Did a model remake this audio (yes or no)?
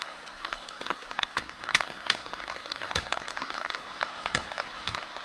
yes